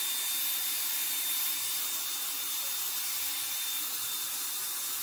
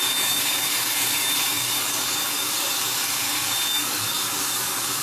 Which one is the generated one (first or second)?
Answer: second